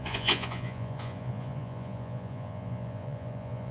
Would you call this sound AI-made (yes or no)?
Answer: yes